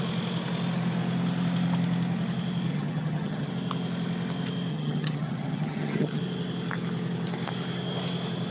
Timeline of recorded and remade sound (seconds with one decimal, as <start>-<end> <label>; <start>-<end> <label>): 0.0-2.7 recorded; 2.7-3.5 remade; 3.5-4.7 recorded; 4.7-6.2 remade; 6.2-8.5 recorded